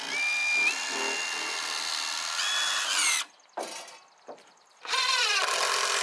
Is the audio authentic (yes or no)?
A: yes